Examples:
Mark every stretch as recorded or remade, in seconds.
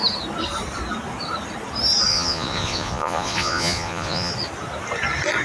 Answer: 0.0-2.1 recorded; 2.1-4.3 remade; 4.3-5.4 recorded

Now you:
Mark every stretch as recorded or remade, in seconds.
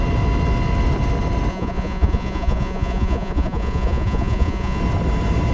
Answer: 0.0-1.5 recorded; 1.5-4.8 remade; 4.8-5.5 recorded